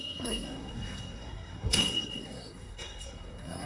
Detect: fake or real fake